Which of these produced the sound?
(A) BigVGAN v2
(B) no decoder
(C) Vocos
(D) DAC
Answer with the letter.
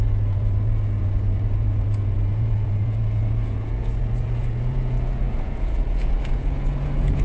C